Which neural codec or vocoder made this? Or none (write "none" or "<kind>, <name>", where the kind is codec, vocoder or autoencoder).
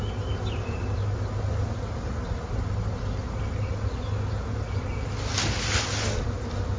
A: none